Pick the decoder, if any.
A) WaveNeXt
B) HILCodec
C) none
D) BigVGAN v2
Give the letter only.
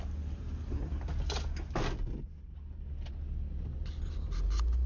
C